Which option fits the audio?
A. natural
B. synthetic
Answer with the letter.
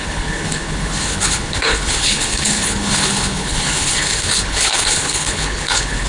B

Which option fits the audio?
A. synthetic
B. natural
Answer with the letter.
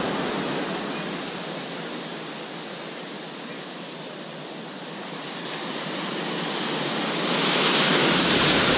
B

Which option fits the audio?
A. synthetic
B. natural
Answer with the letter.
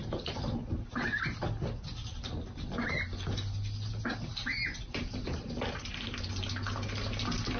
B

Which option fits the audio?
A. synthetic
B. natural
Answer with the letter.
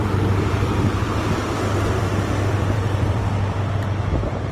A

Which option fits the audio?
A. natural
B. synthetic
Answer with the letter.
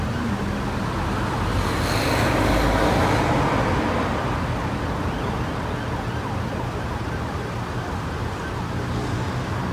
A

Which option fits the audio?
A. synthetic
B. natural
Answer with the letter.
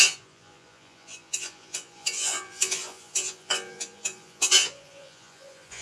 A